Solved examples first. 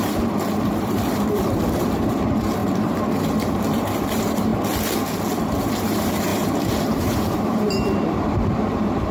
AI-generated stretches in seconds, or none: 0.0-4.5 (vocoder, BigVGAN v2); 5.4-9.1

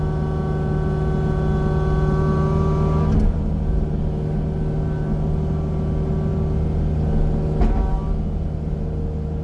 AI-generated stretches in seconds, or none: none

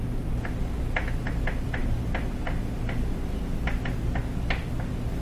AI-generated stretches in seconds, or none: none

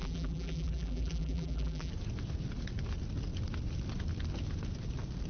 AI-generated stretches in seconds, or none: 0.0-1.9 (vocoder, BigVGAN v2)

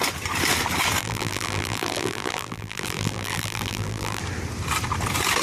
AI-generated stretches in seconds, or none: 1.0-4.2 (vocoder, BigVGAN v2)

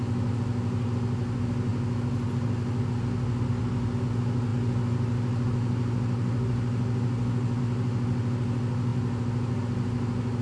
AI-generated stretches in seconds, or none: none